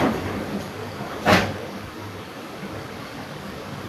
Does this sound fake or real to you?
fake